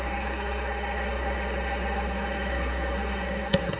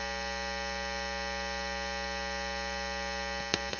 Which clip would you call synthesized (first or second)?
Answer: first